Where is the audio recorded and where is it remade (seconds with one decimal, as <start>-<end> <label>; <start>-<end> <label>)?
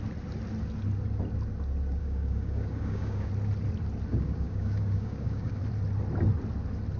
0.0-2.0 recorded; 2.0-3.3 remade; 3.3-4.1 recorded; 4.1-5.6 remade; 5.6-7.0 recorded